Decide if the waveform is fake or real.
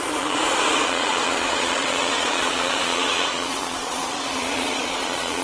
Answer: fake